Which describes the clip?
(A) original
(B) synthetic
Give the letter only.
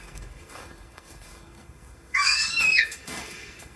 B